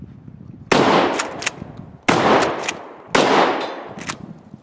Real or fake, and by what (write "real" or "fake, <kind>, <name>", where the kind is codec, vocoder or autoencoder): real